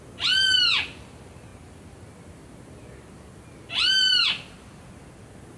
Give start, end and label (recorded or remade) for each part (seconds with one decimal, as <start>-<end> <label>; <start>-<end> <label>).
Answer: 0.0-5.6 recorded